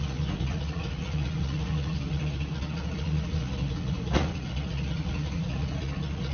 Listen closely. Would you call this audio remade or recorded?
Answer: remade